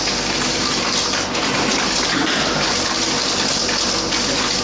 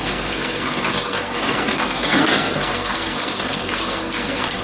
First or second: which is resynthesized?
second